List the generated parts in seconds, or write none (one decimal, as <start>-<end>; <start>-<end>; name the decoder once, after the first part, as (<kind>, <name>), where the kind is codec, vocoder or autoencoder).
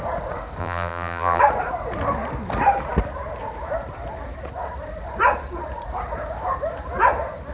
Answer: 0.6-1.4 (vocoder, BigVGAN v2)